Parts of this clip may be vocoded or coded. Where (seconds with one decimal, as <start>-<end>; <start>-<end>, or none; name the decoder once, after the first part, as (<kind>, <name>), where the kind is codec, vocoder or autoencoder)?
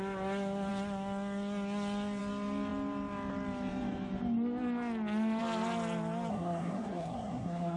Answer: 6.3-7.8 (codec, SNAC)